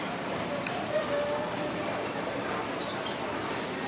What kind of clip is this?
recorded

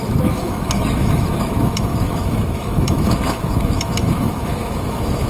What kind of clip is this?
remade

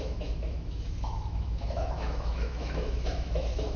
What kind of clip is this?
remade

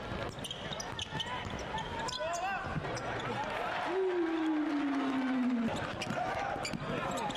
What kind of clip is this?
recorded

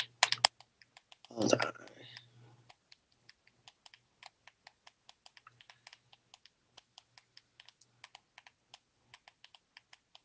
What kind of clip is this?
recorded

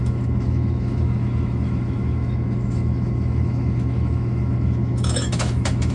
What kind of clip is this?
remade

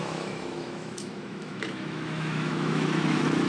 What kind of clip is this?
remade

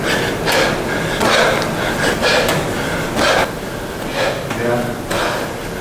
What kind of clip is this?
recorded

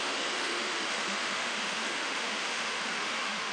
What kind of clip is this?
remade